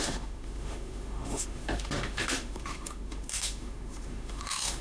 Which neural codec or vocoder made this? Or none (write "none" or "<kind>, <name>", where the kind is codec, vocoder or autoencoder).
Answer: autoencoder, DAC-VAE